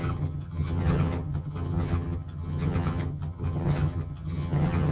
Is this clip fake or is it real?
fake